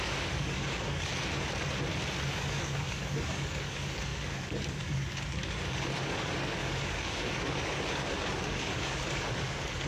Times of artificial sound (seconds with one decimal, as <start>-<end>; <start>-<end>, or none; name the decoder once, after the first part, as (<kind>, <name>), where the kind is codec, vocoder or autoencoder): 0.0-1.1 (codec, DAC); 2.3-9.9